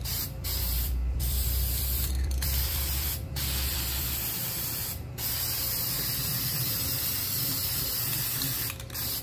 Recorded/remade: remade